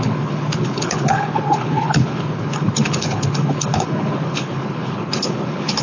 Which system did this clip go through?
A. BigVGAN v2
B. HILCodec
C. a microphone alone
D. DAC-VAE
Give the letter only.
B